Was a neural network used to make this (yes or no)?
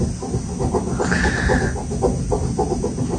no